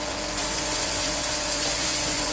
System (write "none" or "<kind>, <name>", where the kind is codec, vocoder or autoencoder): vocoder, Vocos